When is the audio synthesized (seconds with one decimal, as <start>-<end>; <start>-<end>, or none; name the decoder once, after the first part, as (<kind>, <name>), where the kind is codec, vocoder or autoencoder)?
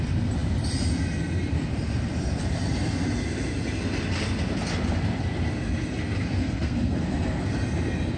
6.4-7.5 (codec, SNAC)